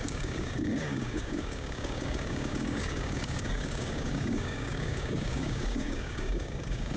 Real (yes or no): no